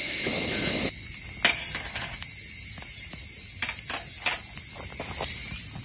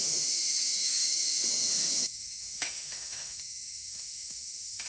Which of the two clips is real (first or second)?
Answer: first